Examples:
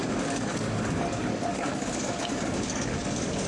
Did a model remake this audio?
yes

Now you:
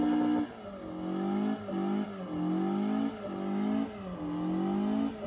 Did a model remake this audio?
no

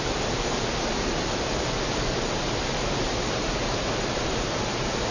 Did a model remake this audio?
yes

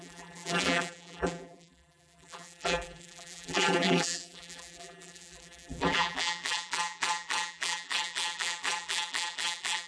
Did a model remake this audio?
yes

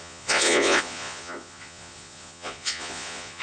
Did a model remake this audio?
yes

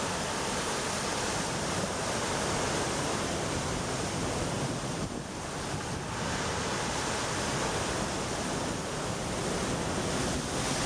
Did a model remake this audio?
no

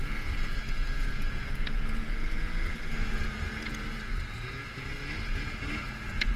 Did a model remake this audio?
yes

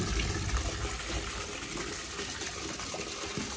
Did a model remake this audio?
no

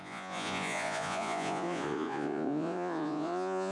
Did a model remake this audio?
yes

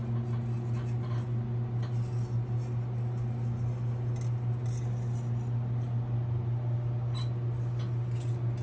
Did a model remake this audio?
no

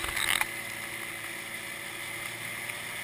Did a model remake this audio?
no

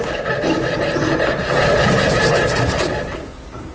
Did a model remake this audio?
no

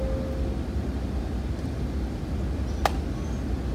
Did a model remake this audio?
no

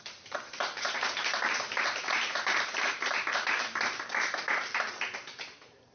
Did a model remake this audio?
yes